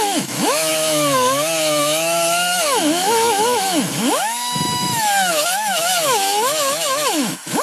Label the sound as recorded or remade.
remade